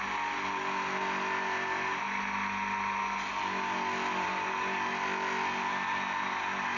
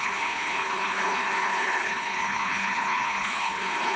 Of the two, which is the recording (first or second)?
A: first